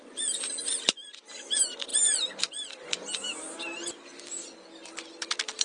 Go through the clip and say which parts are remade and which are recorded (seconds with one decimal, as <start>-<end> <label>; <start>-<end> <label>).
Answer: 0.0-5.6 recorded